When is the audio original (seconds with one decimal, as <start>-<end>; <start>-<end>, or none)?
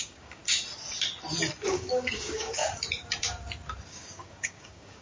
0.4-1.7; 2.6-3.9